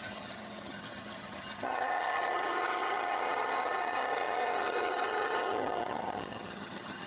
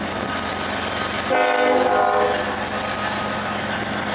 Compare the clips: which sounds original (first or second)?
second